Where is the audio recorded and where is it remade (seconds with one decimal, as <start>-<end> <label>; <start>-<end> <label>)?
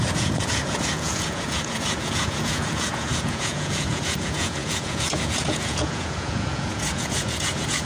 0.0-7.9 remade